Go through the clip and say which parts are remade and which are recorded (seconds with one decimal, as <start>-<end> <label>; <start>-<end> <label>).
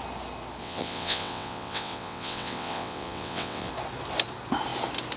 0.0-0.6 recorded; 0.6-3.7 remade; 3.7-5.2 recorded